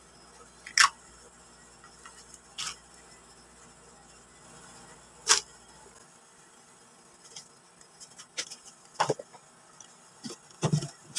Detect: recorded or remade recorded